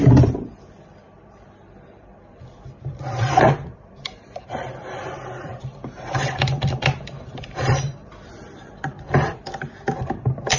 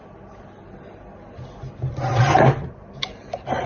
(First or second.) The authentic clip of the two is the second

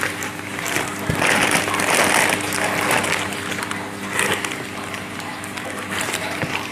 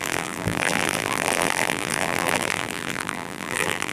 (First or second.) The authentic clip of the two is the first